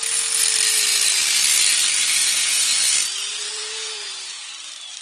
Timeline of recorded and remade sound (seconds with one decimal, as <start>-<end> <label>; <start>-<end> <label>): 0.0-2.2 recorded; 2.2-2.7 remade; 2.7-3.3 recorded; 3.3-4.5 remade; 4.5-5.0 recorded